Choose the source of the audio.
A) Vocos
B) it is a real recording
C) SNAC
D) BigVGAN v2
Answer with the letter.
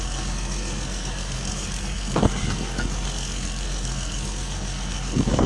C